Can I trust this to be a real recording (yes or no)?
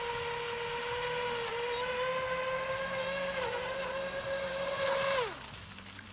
yes